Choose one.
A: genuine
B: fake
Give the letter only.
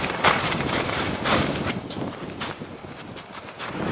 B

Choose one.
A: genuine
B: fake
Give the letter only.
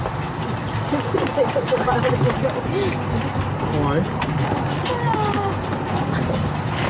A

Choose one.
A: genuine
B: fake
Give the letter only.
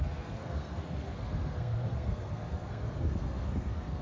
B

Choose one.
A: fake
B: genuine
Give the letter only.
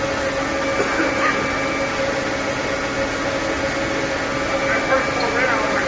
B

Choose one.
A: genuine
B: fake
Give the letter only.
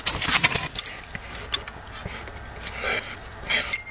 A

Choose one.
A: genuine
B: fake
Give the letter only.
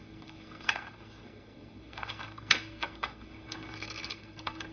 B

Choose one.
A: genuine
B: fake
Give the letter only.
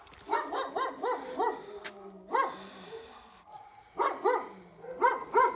A